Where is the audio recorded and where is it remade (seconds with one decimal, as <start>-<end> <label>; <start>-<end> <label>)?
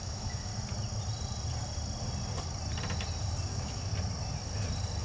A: 0.0-0.5 remade; 0.5-3.5 recorded; 3.5-3.9 remade; 3.9-5.0 recorded